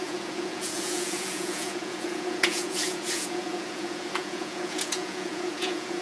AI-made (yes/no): yes